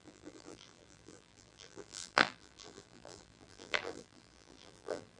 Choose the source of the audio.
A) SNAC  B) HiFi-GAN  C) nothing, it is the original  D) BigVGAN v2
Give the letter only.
D